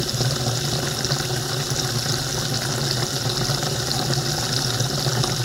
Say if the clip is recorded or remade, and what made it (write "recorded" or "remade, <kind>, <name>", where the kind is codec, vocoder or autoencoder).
recorded